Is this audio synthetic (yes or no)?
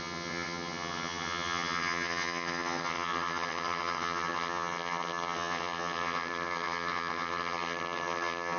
yes